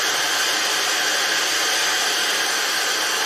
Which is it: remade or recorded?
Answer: recorded